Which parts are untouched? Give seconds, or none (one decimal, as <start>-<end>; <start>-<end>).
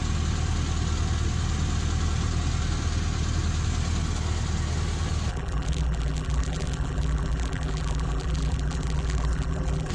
0.0-5.3